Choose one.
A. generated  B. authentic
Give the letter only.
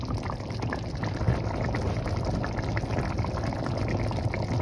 B